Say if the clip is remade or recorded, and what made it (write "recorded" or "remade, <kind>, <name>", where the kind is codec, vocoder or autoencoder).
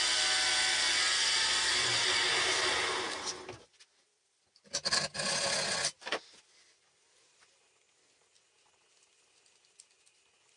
recorded